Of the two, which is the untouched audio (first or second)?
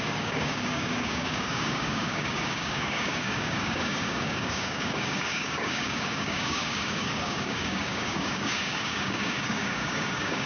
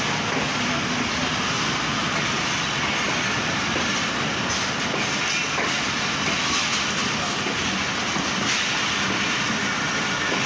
second